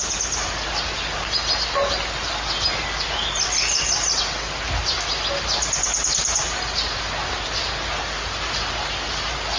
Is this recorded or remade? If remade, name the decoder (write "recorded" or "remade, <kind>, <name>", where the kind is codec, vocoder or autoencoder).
recorded